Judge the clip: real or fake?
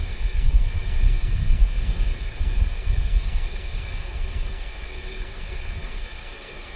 fake